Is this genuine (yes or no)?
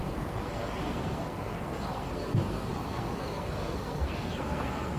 no